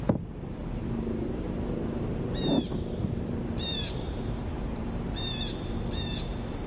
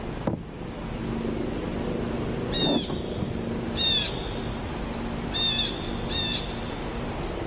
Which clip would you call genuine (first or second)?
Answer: second